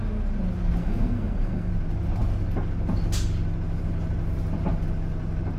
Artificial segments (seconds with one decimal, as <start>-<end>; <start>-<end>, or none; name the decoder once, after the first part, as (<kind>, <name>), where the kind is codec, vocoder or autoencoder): 0.8-1.7 (codec, SNAC)